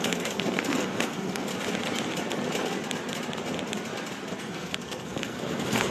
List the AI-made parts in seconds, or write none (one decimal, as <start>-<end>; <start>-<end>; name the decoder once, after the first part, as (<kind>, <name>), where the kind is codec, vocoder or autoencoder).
0.0-1.5 (codec, SNAC); 4.4-5.9